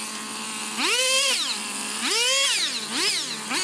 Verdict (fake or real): real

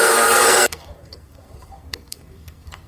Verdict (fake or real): fake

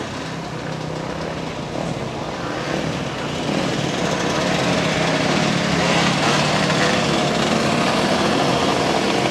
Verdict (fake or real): real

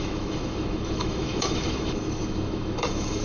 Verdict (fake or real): fake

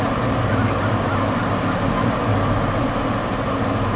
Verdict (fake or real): real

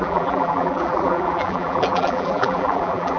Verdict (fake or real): fake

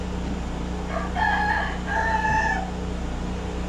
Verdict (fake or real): real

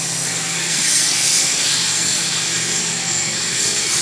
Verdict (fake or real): fake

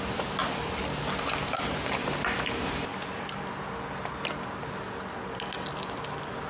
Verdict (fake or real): real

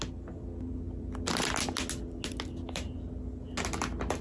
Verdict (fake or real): real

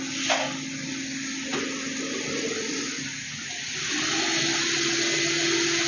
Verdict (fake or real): real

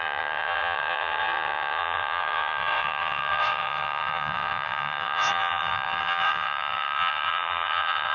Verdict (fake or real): fake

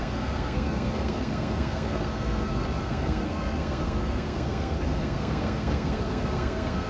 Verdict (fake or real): fake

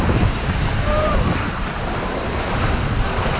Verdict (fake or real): fake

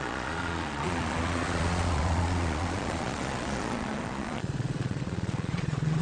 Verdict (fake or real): fake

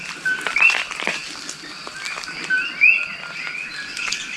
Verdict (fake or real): real